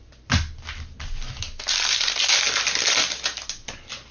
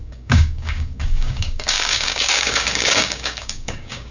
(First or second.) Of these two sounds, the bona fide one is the first